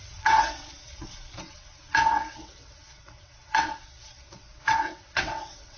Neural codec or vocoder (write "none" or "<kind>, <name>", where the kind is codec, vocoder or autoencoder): vocoder, WaveNeXt